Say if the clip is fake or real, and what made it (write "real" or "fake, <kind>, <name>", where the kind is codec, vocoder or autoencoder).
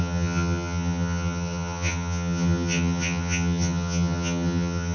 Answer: fake, vocoder, HiFi-GAN